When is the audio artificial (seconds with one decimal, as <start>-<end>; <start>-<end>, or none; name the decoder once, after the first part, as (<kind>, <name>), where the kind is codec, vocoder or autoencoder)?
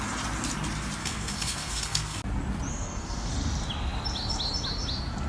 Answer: 1.0-2.2 (codec, SNAC); 2.7-3.3